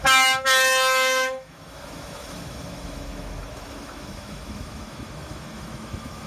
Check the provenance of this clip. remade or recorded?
remade